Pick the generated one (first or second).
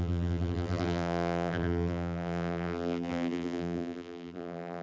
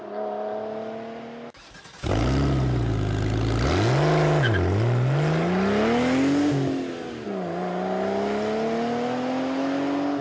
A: first